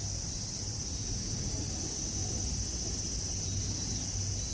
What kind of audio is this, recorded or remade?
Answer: recorded